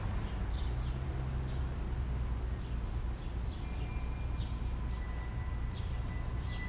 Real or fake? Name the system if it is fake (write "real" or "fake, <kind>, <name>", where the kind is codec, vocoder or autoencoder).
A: real